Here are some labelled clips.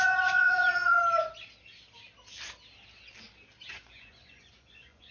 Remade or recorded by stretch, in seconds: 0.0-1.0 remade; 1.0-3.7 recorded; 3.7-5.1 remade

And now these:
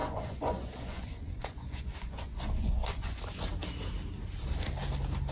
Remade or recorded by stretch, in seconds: 0.0-3.2 remade; 3.2-5.3 recorded

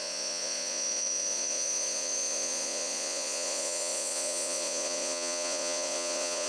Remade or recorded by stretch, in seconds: 0.0-6.5 remade

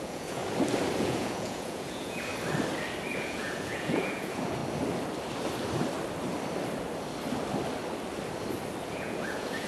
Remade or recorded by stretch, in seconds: 0.0-0.4 remade; 0.4-1.0 recorded; 1.0-2.3 remade; 2.3-3.1 recorded; 3.1-4.6 remade; 4.6-8.8 recorded; 8.8-9.7 remade

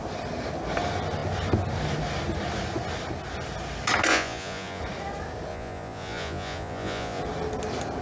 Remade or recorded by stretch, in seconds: 0.0-4.1 recorded; 4.1-4.8 remade; 4.8-5.5 recorded; 5.5-7.2 remade; 7.2-8.0 recorded

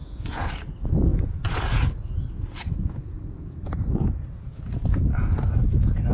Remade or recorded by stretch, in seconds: 0.0-0.7 remade; 0.7-1.1 recorded; 1.1-4.6 remade; 4.6-6.1 recorded

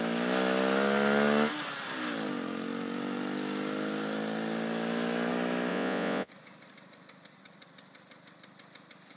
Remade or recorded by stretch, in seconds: 0.0-5.7 recorded; 5.7-6.3 remade; 6.3-9.2 recorded

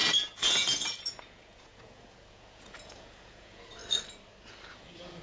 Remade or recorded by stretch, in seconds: 0.0-3.8 remade; 3.8-4.7 recorded; 4.7-5.2 remade